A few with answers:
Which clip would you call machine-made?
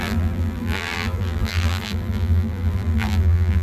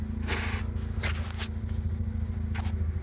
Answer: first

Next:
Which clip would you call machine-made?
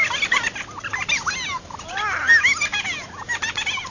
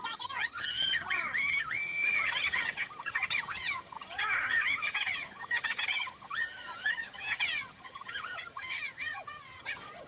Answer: second